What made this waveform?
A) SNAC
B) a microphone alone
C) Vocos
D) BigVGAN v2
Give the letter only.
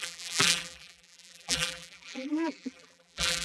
D